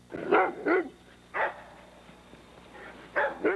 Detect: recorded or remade recorded